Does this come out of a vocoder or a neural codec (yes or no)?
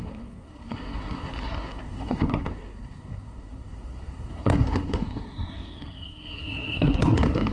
yes